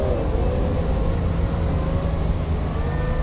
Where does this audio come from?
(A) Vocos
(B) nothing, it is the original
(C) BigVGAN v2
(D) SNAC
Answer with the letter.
B